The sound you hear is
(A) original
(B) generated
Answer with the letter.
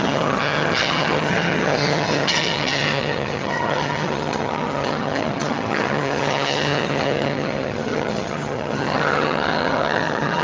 B